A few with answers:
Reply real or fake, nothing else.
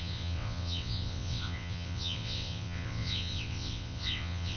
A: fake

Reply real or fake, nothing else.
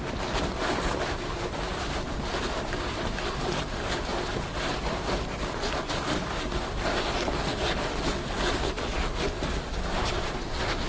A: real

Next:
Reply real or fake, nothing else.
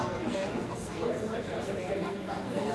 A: fake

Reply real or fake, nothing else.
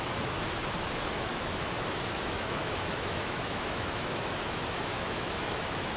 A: fake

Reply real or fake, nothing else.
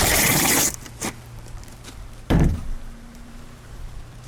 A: fake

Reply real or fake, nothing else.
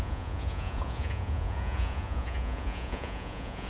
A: fake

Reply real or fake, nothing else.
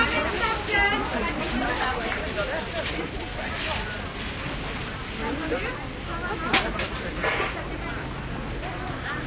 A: fake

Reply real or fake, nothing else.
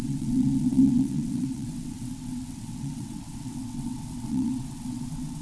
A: fake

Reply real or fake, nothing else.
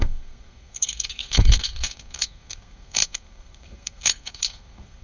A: fake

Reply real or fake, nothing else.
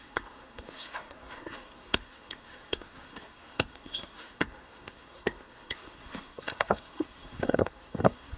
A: fake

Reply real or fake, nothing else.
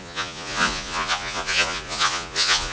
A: fake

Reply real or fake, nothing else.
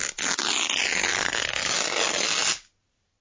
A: real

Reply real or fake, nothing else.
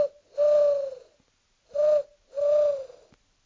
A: real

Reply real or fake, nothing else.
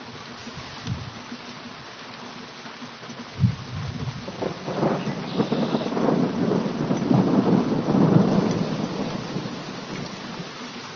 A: real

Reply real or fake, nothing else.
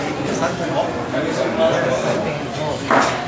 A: real